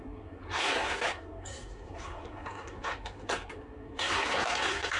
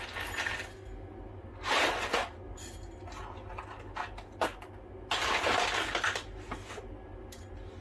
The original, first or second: second